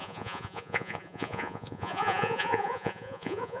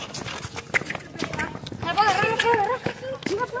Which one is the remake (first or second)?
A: first